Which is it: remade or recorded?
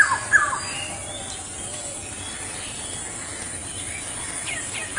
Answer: recorded